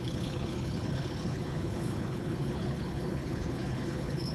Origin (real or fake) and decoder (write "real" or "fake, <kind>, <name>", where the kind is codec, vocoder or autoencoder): fake, codec, HILCodec